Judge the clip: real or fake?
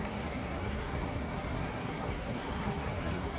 fake